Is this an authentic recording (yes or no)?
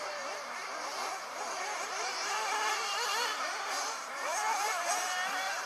no